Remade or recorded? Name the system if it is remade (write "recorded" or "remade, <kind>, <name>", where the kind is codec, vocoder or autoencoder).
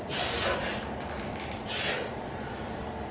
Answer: recorded